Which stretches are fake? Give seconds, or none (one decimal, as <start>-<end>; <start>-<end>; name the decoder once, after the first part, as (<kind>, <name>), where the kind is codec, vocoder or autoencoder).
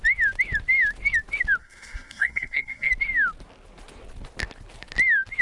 1.6-2.9 (codec, SNAC)